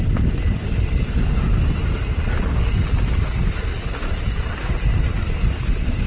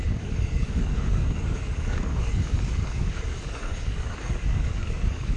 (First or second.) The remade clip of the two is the second